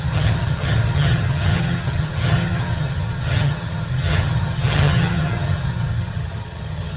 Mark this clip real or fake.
fake